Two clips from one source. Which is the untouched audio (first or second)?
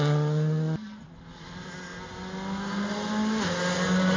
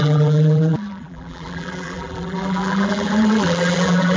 first